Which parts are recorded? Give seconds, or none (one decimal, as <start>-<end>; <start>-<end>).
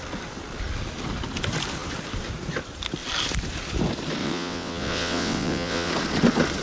0.0-4.2; 5.9-6.6